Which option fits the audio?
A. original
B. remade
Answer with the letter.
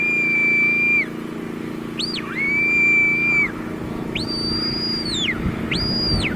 A